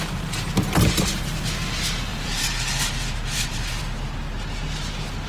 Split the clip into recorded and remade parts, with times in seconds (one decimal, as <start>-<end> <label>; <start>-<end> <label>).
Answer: 0.0-2.1 recorded; 2.1-3.8 remade; 3.8-5.3 recorded